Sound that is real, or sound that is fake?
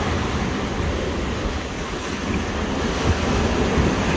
real